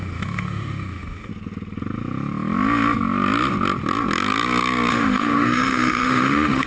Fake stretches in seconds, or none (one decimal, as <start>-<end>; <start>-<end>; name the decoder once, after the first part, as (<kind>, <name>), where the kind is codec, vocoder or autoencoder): 0.0-1.3 (autoencoder, DAC-VAE); 4.9-6.7